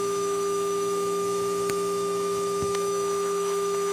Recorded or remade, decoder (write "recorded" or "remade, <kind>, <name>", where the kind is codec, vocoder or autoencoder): remade, autoencoder, DAC-VAE